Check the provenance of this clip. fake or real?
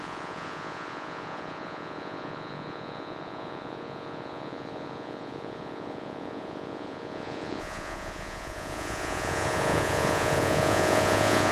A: fake